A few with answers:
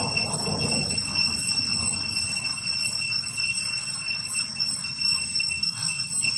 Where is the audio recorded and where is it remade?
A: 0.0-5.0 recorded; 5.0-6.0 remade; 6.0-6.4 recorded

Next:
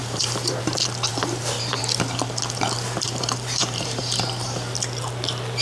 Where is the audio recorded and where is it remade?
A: 0.0-0.6 remade; 0.6-1.1 recorded; 1.1-1.8 remade; 1.8-3.0 recorded; 3.0-4.0 remade; 4.0-5.6 recorded

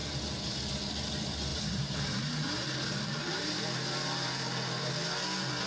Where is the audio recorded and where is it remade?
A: 0.0-1.5 recorded; 1.5-4.9 remade; 4.9-5.7 recorded

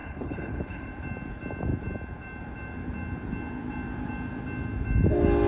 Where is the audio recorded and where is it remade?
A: 0.0-0.9 remade; 0.9-5.5 recorded

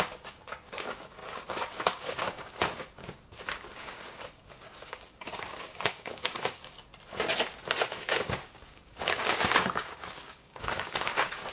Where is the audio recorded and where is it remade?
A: 0.0-6.9 remade; 6.9-7.8 recorded; 7.8-11.5 remade